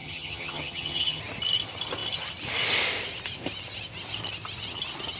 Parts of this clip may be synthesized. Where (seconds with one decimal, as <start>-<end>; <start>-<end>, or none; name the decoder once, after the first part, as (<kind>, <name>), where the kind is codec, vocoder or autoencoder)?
0.0-1.2 (vocoder, HiFi-GAN)